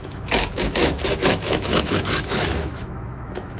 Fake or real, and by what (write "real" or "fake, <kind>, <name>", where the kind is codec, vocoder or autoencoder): fake, autoencoder, DAC-VAE